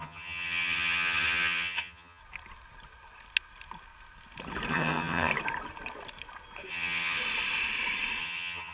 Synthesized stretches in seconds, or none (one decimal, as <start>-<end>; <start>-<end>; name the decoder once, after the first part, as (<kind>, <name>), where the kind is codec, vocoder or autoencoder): 0.0-2.2 (vocoder, HiFi-GAN); 4.7-5.3; 6.7-7.2; 8.2-8.7